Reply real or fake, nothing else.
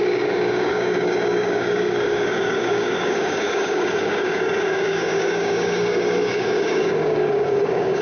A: fake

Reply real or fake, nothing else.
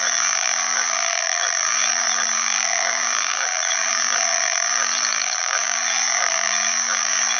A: fake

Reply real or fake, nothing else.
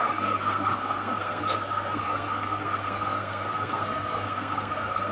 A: fake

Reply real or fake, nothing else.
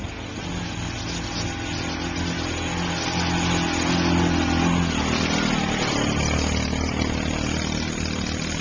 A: real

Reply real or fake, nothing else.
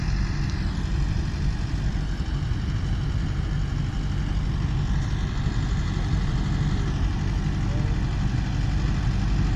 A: real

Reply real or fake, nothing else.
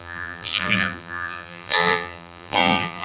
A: fake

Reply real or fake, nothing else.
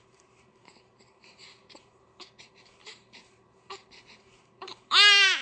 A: fake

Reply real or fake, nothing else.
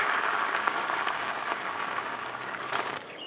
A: fake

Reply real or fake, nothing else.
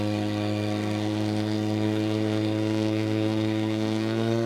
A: fake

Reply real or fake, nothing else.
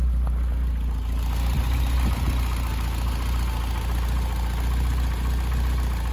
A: real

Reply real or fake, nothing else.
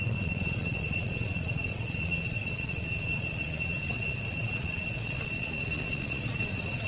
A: fake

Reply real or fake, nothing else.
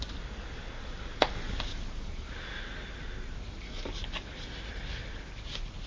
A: real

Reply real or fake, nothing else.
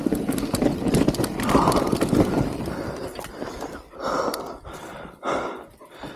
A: real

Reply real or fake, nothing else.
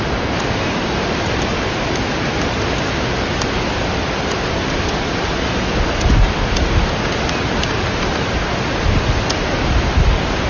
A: real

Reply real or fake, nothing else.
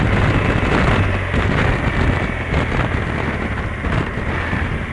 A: real